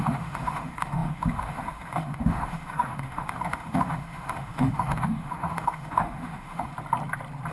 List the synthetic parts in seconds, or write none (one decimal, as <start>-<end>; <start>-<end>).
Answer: 0.0-6.7